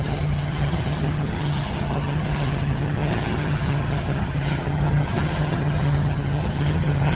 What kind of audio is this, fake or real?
fake